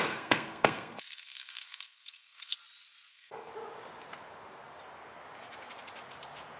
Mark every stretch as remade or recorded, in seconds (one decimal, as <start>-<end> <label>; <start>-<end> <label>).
0.0-2.5 remade; 2.5-3.1 recorded; 3.1-3.5 remade; 3.5-6.6 recorded